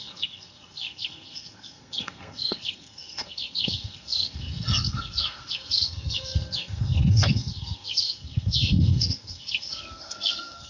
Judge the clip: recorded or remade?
remade